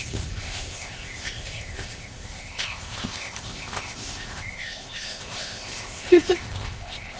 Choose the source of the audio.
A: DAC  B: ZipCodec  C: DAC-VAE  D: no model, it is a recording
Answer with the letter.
B